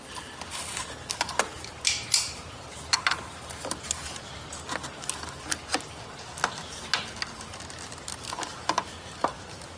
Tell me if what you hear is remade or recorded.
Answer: recorded